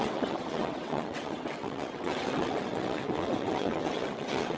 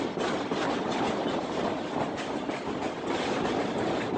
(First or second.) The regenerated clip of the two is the first